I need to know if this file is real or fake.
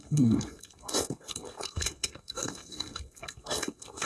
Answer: fake